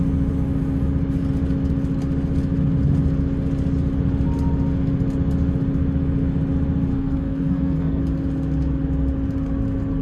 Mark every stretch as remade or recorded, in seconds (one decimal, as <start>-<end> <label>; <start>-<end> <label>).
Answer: 0.0-6.9 recorded; 6.9-8.0 remade; 8.0-10.0 recorded

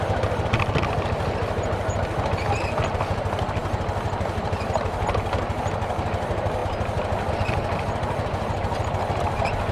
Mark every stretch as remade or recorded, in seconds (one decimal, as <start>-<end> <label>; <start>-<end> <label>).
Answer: 0.0-9.7 recorded

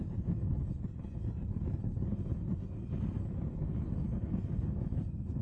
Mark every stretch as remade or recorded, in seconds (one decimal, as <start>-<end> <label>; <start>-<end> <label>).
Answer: 0.0-5.4 recorded

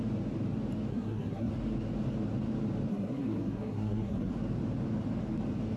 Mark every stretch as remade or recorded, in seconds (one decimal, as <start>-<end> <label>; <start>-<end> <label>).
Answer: 0.0-0.9 recorded; 0.9-1.5 remade; 1.5-2.9 recorded; 2.9-4.3 remade; 4.3-5.8 recorded

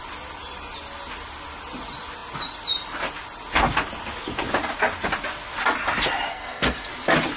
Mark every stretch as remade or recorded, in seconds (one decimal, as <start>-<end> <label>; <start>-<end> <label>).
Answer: 0.0-6.3 recorded; 6.3-6.9 remade; 6.9-7.4 recorded

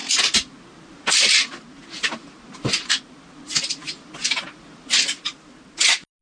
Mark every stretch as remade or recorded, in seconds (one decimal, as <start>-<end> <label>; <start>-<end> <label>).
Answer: 0.0-6.2 recorded